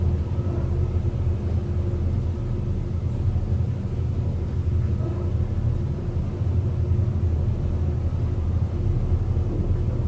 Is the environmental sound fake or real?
real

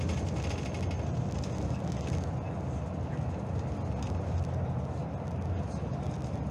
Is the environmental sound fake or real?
real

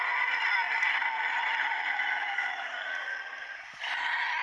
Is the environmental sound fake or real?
real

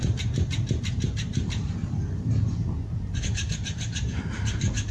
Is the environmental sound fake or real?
fake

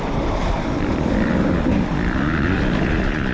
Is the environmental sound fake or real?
fake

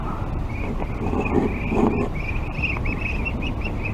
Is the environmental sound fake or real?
real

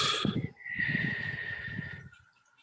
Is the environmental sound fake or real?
real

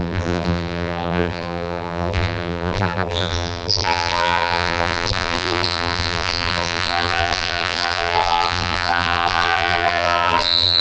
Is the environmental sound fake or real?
fake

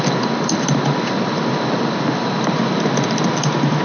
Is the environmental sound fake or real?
real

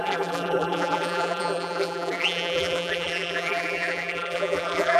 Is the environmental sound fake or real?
fake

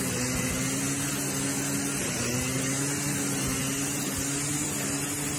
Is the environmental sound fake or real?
real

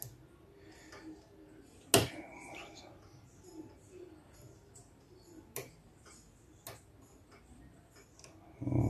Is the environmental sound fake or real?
real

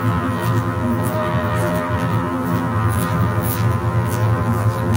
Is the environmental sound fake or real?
fake